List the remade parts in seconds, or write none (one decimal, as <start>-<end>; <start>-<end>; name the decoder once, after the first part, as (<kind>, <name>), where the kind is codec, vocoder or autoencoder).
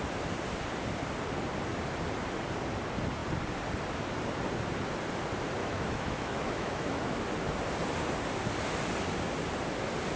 5.6-7.2 (autoencoder, DAC-VAE)